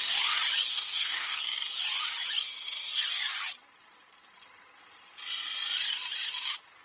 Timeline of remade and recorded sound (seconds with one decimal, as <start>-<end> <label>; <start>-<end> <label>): 0.0-0.7 recorded; 0.7-1.4 remade; 1.4-6.8 recorded